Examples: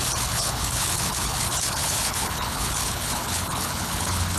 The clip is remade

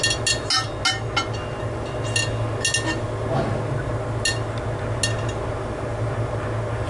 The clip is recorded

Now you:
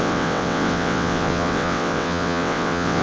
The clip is remade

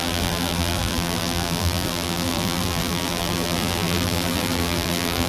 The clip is remade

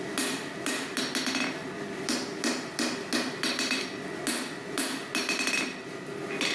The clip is recorded